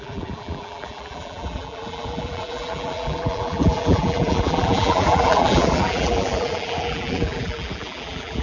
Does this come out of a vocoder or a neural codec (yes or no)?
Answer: yes